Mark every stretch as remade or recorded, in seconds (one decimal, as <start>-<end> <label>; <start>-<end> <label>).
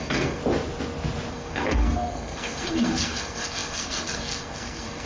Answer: 0.0-0.4 remade; 0.4-1.3 recorded; 1.3-5.1 remade